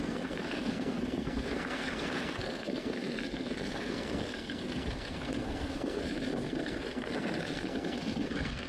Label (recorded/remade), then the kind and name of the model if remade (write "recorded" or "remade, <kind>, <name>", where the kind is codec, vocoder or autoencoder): remade, codec, SNAC